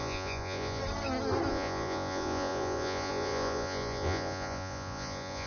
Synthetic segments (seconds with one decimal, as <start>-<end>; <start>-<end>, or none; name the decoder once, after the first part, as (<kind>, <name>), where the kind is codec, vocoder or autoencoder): 0.0-0.8 (vocoder, Vocos); 1.5-5.5